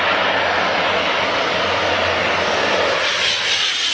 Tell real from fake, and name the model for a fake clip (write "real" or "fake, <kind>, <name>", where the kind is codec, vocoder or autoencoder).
real